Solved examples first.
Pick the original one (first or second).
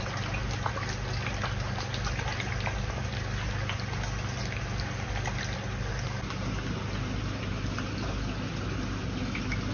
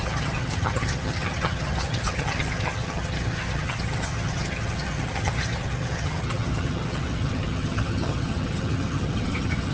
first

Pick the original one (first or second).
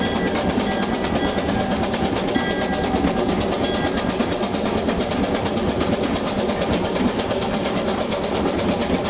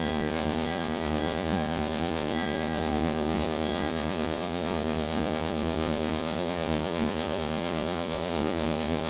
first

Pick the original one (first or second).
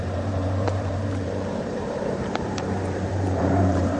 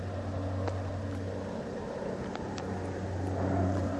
second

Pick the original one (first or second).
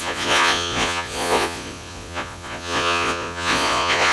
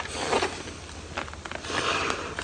second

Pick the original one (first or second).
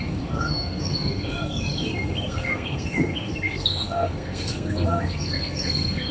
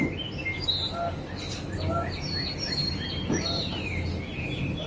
second